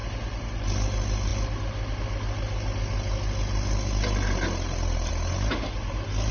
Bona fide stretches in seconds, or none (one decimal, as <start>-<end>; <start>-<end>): 0.0-6.3